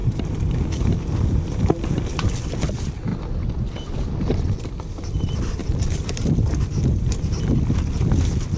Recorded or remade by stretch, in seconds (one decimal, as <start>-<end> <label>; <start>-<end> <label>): 0.0-0.8 remade; 0.8-8.6 recorded